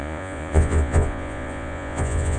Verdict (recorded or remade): remade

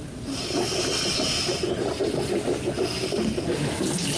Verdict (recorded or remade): recorded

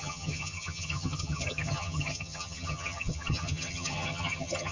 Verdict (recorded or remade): remade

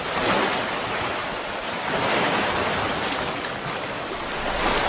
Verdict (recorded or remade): recorded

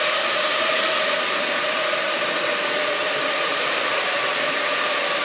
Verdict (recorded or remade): recorded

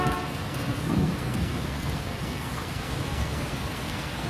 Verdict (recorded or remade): remade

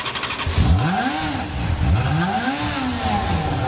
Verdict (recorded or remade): recorded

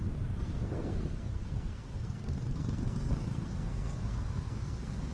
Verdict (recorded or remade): remade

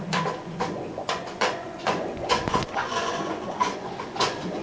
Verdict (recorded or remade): remade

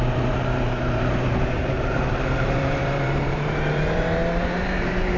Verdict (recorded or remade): remade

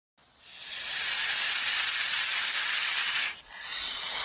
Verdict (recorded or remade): recorded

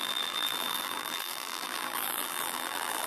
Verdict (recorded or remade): remade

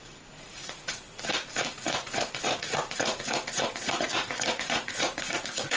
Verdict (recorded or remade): remade